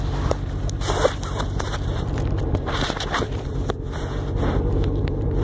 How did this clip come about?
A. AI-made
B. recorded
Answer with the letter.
A